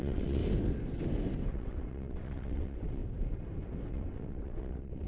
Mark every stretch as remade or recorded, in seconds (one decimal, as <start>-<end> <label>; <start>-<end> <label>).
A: 0.0-0.4 remade; 0.4-1.5 recorded; 1.5-3.0 remade; 3.0-3.9 recorded; 3.9-5.1 remade